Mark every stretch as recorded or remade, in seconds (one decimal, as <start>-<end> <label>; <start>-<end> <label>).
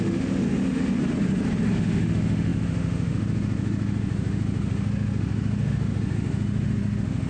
0.0-1.0 remade; 1.0-1.7 recorded; 1.7-7.3 remade